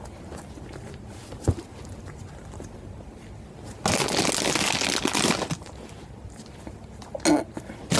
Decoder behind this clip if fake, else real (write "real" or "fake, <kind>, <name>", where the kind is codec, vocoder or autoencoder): real